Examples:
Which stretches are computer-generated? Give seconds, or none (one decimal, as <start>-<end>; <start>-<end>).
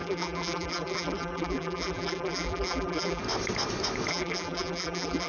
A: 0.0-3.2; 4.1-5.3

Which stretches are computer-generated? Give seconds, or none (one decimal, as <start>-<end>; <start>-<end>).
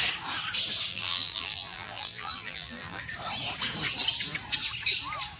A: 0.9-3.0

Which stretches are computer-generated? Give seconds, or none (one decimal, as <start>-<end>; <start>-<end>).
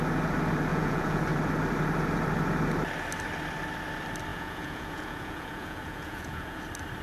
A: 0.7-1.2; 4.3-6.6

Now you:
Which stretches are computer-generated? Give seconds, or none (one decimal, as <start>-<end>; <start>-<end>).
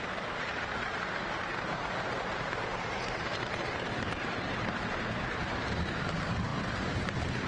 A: 0.0-7.5